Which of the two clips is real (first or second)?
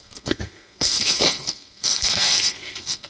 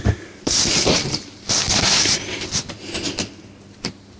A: second